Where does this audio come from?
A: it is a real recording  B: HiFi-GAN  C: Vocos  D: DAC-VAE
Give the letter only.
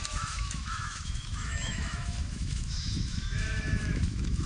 D